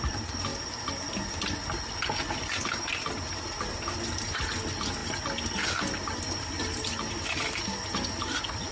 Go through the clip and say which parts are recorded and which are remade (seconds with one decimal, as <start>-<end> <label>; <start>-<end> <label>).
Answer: 0.0-0.5 remade; 0.5-4.3 recorded; 4.3-5.0 remade; 5.0-6.2 recorded; 6.2-8.7 remade